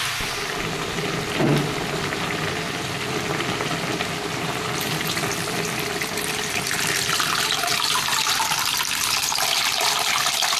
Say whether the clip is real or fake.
real